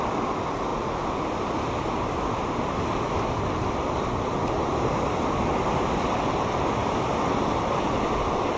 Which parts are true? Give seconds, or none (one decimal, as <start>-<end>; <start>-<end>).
0.0-8.6